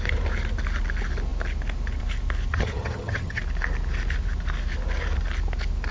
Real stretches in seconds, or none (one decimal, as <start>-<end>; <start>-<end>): 0.0-2.5; 3.4-5.9